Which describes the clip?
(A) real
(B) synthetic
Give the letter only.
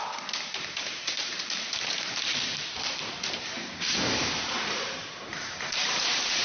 B